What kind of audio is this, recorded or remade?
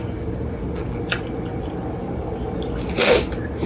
recorded